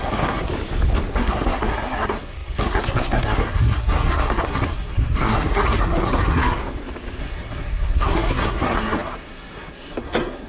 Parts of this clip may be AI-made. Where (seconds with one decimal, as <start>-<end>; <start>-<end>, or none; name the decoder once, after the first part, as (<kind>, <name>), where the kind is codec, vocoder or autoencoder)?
0.0-0.5 (codec, SNAC); 1.1-6.6; 7.2-10.5